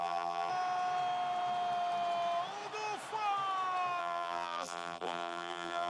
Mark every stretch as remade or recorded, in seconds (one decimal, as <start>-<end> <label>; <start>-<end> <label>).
0.0-0.5 remade; 0.5-4.0 recorded; 4.0-5.9 remade